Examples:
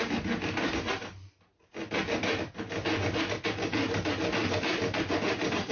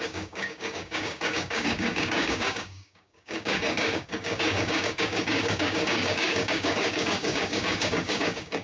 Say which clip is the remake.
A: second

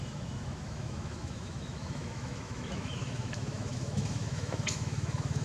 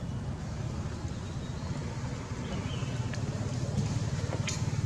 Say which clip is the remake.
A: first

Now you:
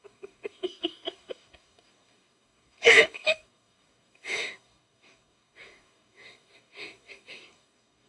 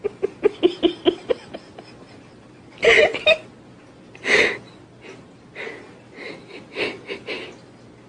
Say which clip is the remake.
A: first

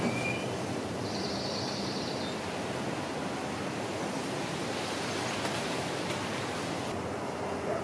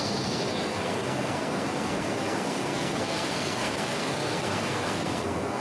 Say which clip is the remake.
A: second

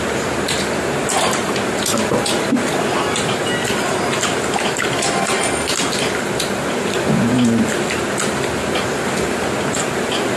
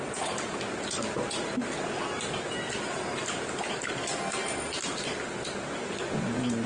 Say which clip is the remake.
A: first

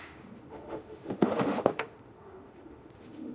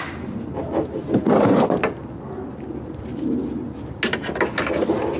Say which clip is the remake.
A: first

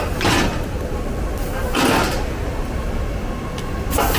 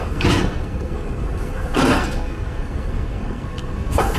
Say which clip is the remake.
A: second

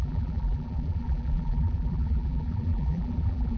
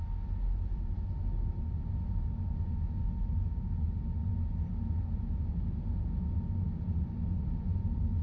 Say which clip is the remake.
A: first